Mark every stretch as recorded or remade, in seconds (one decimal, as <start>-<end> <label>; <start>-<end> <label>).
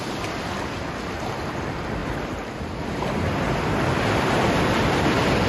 0.0-5.5 recorded